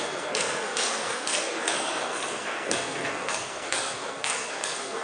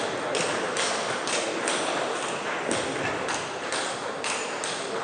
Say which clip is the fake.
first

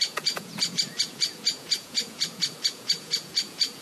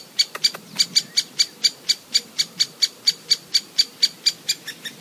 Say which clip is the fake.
first